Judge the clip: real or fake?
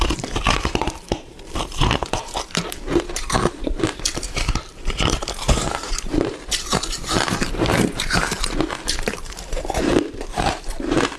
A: fake